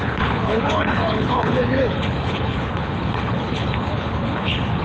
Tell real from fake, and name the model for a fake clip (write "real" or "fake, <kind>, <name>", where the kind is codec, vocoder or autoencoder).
fake, codec, HILCodec